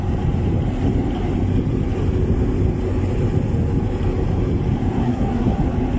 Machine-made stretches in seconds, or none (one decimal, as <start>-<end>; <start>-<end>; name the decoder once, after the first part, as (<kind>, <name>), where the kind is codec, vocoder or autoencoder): 5.0-5.6 (codec, SNAC)